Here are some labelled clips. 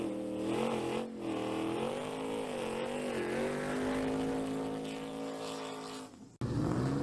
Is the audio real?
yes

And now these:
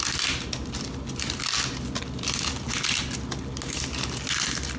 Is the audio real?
yes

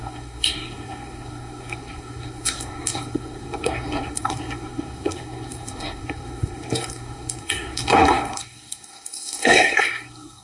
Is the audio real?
no